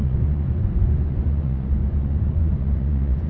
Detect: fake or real fake